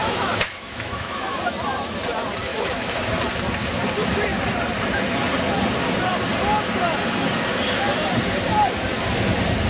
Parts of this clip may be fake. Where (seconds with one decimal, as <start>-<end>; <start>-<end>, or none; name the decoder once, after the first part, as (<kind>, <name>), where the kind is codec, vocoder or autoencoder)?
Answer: 0.0-1.4 (autoencoder, DAC-VAE); 2.5-3.0